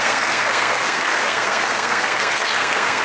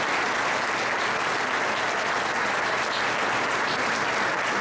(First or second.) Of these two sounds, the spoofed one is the first